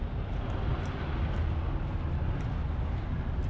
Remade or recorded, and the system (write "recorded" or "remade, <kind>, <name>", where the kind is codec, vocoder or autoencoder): recorded